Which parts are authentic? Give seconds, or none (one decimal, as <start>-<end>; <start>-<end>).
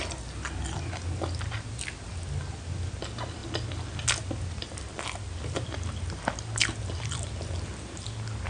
0.0-8.5